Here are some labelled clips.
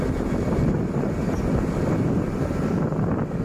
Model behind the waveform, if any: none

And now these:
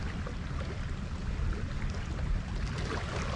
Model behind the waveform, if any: vocoder, BigVGAN v2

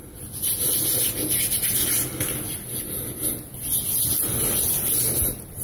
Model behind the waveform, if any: none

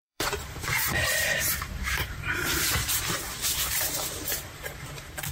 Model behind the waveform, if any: vocoder, BigVGAN v2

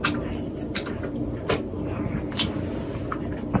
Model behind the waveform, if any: none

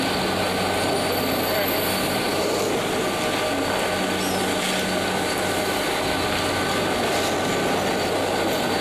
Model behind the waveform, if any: none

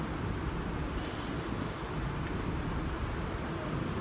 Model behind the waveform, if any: none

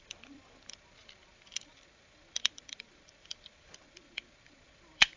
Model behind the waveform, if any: vocoder, BigVGAN v2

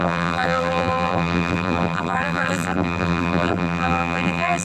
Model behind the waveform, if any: vocoder, BigVGAN v2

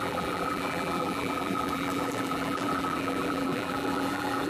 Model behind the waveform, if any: vocoder, BigVGAN v2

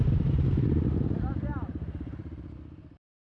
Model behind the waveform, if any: vocoder, BigVGAN v2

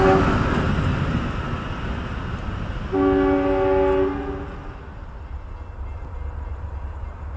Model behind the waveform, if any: none